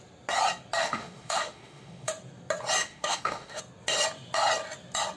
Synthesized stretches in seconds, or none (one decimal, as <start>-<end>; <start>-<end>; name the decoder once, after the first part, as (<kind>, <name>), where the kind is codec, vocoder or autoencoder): 0.8-2.1 (autoencoder, DAC-VAE); 2.8-3.6